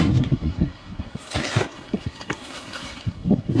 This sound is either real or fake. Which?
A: fake